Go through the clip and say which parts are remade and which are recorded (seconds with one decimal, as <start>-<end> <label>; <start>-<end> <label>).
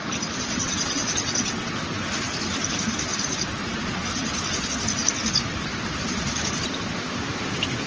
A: 0.0-0.6 recorded; 0.6-1.7 remade; 1.7-7.9 recorded